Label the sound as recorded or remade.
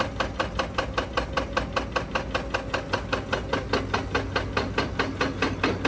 recorded